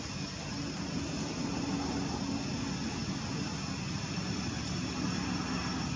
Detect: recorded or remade recorded